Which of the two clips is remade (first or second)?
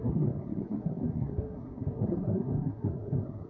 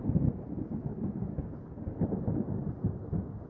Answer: first